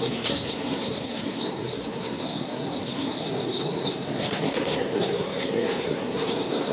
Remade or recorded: remade